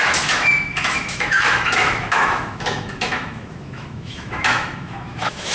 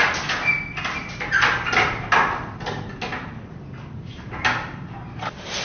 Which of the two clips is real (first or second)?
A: second